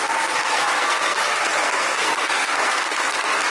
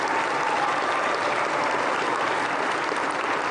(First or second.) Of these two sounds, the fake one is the first